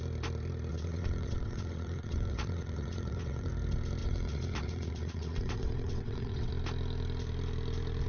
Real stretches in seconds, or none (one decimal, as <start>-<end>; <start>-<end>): 0.0-0.7; 3.5-4.0; 6.5-8.1